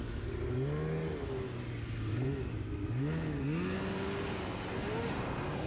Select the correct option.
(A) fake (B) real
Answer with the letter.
B